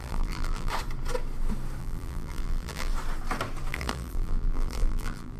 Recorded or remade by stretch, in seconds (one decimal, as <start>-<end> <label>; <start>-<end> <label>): 0.0-0.7 remade; 0.7-1.8 recorded; 1.8-2.9 remade; 2.9-3.7 recorded; 3.7-5.4 remade